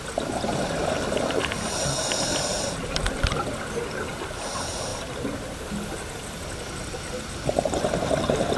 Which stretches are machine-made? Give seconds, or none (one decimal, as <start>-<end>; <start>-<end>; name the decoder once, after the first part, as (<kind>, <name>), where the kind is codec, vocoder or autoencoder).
none